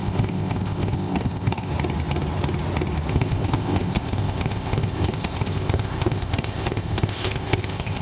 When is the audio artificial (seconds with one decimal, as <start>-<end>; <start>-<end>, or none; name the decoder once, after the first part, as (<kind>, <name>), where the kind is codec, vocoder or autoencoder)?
0.0-1.7 (codec, ZipCodec); 3.1-8.0